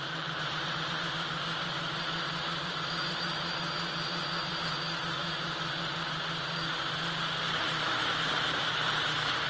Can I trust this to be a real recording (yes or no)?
no